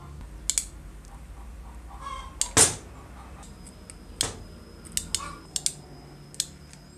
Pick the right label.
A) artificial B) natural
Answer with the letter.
B